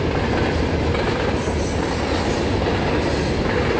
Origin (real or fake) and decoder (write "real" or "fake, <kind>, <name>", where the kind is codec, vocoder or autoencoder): real